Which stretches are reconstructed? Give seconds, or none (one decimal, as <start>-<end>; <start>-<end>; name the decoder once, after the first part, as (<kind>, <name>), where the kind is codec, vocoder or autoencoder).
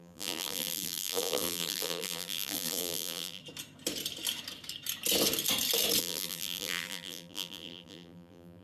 0.0-3.4 (vocoder, BigVGAN v2); 6.0-8.6